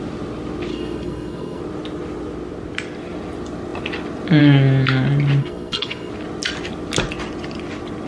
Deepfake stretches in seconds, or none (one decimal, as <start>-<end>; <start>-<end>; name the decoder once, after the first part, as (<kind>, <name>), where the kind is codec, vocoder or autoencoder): 0.7-1.6 (codec, SNAC); 5.4-6.1